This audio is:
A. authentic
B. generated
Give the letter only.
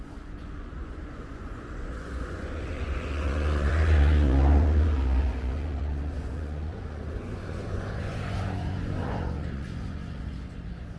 B